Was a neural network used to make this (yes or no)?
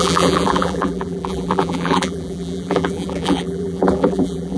yes